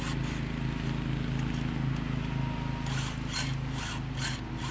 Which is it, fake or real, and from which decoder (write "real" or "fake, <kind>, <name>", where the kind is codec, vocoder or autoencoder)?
real